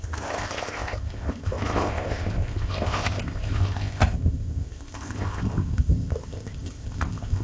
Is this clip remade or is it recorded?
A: remade